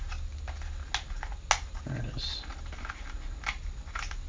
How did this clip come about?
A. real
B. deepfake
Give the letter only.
A